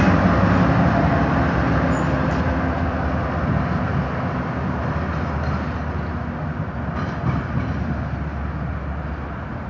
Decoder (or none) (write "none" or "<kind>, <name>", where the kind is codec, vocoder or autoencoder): none